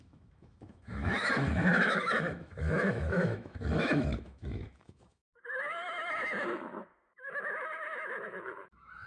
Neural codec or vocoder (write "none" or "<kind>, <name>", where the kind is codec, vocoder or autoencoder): autoencoder, DAC-VAE